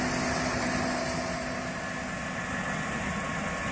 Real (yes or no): yes